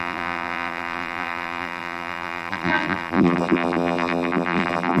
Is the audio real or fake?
fake